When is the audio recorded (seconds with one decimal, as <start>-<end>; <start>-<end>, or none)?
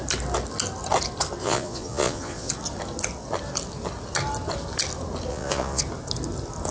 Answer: 0.0-1.4; 2.5-5.3; 5.8-6.7